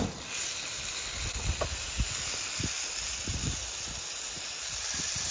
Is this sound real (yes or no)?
yes